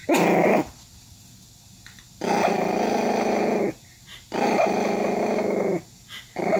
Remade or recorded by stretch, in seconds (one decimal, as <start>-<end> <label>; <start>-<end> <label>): 0.0-6.6 recorded